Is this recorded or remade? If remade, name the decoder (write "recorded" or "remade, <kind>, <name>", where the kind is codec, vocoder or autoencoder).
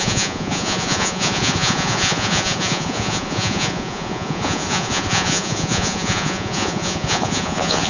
remade, vocoder, Vocos